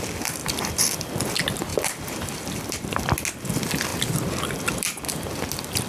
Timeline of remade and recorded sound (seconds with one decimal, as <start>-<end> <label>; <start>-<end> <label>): 0.0-0.4 recorded; 0.4-1.2 remade; 1.2-1.7 recorded; 1.7-3.0 remade; 3.0-5.9 recorded